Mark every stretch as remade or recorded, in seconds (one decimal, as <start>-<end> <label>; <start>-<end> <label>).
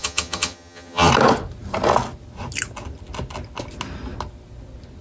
0.0-1.1 remade; 1.1-5.0 recorded